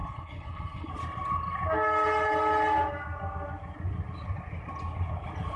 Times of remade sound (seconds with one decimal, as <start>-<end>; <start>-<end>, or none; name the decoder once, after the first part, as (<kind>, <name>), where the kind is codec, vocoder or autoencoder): 0.0-0.9 (codec, HILCodec)